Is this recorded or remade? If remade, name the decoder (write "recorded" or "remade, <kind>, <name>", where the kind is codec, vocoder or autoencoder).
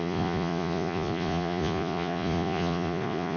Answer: remade, vocoder, Vocos